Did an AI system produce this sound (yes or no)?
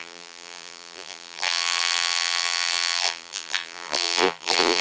yes